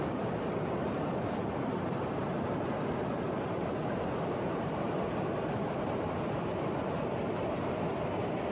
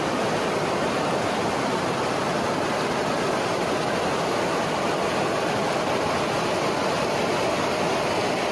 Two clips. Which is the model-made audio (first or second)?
first